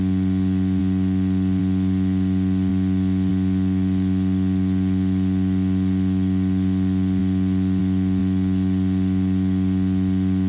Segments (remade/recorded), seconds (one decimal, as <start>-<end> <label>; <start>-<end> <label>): 0.0-10.5 recorded